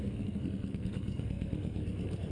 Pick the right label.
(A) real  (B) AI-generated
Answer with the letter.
B